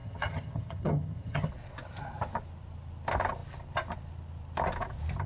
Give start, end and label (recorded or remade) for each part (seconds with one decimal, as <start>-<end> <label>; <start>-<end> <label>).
0.0-1.5 remade; 1.5-5.3 recorded